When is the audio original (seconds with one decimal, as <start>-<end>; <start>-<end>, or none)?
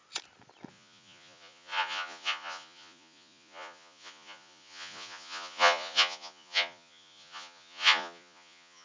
0.0-0.7